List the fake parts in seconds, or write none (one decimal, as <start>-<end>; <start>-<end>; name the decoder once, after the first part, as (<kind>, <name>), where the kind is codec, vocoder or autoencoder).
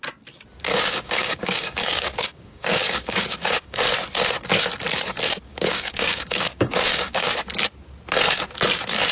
0.7-3.8 (codec, DAC); 5.5-7.3